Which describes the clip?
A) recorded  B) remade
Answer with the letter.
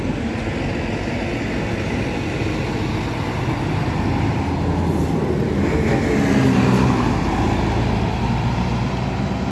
A